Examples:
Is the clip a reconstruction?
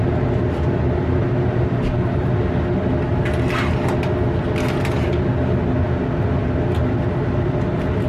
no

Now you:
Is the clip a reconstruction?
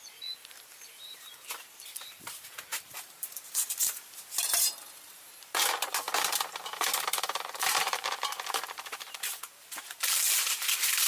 yes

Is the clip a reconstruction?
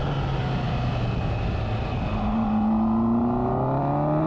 no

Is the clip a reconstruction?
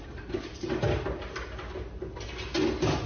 no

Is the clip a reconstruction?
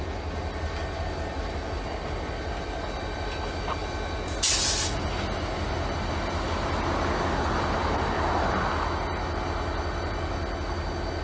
no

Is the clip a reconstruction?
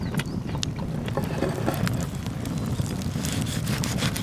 no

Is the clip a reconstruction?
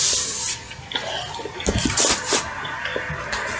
no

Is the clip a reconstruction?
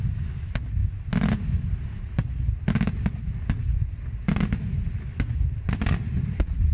no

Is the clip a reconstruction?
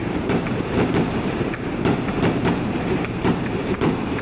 yes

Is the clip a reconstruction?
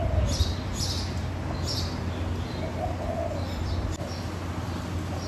no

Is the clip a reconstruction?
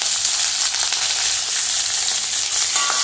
no